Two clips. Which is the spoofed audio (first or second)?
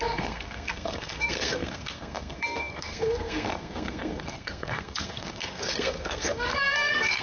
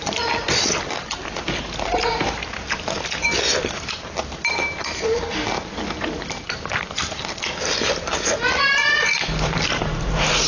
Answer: first